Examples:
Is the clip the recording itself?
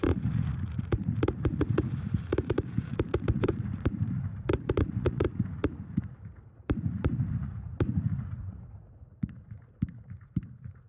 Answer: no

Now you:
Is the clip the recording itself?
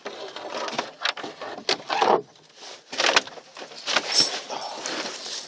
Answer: yes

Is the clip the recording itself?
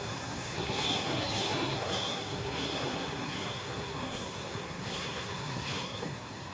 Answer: no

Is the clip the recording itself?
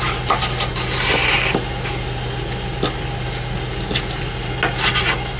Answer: yes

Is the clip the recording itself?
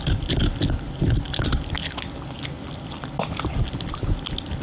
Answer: yes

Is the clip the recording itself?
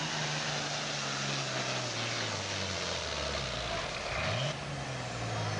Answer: yes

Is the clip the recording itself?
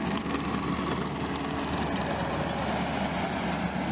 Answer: yes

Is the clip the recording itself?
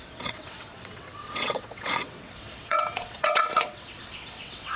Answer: no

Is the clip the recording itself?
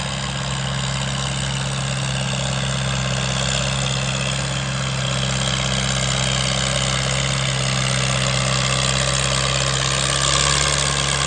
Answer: yes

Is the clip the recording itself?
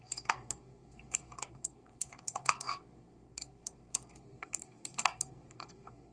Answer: no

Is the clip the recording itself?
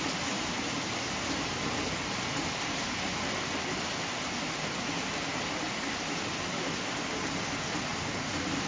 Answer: yes